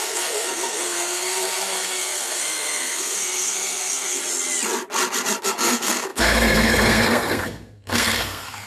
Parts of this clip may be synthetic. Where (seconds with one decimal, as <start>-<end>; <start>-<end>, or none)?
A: 0.0-4.2; 5.4-8.7